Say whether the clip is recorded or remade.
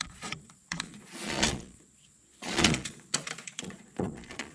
remade